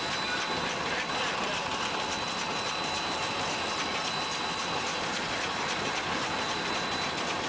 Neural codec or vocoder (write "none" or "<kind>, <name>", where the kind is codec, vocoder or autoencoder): none